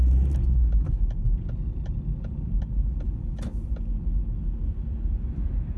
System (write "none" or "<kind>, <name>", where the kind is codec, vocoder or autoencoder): none